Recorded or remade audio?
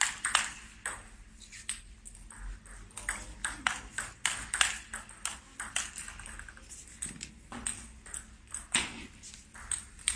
recorded